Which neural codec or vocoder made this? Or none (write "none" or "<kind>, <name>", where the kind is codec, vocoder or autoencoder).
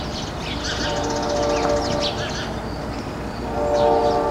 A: none